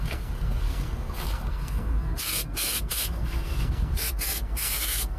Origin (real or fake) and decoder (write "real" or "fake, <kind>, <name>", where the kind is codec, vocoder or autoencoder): fake, codec, SNAC